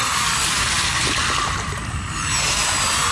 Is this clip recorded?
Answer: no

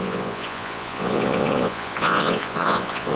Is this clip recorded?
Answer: no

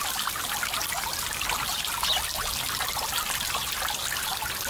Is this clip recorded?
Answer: yes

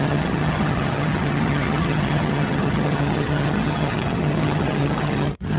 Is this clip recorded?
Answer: no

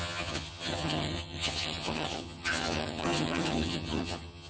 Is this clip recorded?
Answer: no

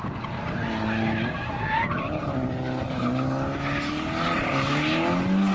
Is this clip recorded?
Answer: yes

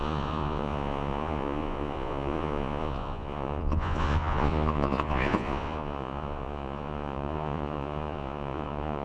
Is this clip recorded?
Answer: no